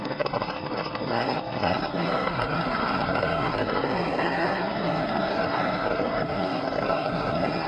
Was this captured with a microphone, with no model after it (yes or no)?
no